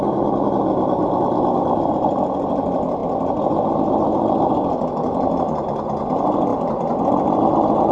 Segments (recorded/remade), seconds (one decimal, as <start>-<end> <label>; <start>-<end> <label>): 0.0-6.5 recorded; 6.5-7.1 remade; 7.1-7.9 recorded